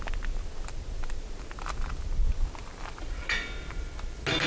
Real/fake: real